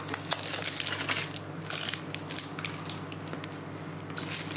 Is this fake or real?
real